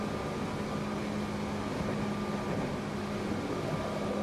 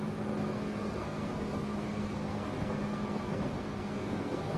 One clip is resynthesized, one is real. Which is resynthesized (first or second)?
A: second